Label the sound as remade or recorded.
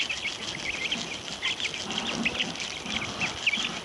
recorded